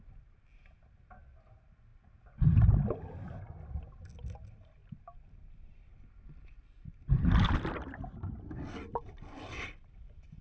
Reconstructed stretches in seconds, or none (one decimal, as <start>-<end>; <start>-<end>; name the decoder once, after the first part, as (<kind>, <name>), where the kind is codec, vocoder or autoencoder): none